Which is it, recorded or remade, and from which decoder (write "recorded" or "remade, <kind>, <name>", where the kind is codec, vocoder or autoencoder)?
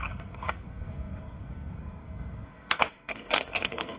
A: remade, codec, SNAC